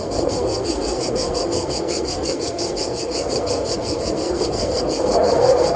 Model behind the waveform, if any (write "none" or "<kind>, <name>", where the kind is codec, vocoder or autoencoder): codec, SNAC